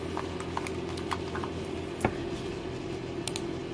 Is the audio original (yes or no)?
yes